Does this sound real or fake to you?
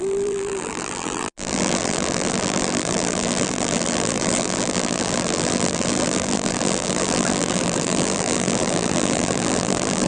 fake